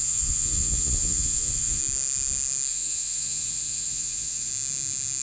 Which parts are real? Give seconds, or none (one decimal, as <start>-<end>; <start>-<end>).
1.8-2.7; 4.5-5.2